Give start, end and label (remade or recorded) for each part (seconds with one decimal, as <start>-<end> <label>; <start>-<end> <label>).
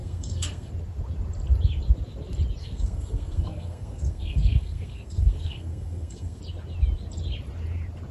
0.0-0.7 remade; 0.7-2.6 recorded; 2.6-6.4 remade; 6.4-8.1 recorded